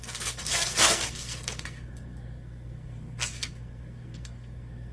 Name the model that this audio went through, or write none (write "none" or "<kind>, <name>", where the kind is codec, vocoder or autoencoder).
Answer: codec, SNAC